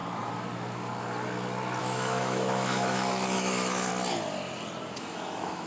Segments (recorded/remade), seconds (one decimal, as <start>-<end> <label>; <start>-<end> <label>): 0.0-1.8 recorded; 1.8-3.9 remade; 3.9-5.0 recorded; 5.0-5.7 remade